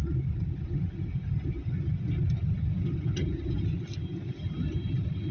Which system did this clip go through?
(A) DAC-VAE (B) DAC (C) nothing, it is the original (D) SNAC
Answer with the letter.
C